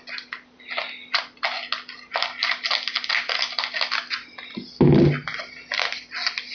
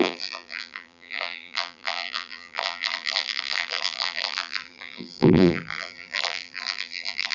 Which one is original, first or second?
first